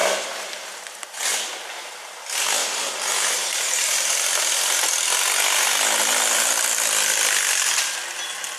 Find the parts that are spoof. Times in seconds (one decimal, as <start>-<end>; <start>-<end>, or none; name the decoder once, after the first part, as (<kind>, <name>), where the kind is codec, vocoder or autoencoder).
0.0-2.0 (vocoder, BigVGAN v2); 2.6-4.2